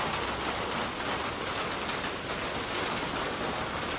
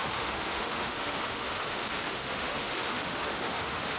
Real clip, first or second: first